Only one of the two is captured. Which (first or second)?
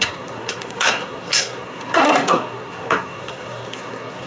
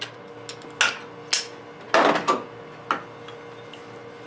second